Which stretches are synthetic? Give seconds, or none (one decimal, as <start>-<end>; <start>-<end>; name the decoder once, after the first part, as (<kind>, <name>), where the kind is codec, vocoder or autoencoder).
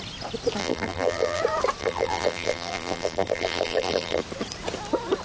0.6-1.4 (vocoder, BigVGAN v2); 1.8-4.2